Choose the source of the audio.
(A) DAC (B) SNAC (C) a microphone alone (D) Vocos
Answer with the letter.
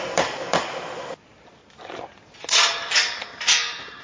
C